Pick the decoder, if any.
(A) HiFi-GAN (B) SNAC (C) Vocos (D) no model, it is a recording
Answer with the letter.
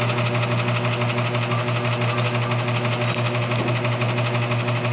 D